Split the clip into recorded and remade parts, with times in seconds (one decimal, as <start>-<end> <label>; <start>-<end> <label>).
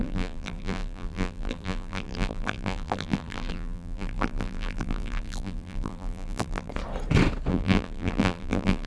0.0-6.7 remade; 6.7-7.5 recorded; 7.5-8.9 remade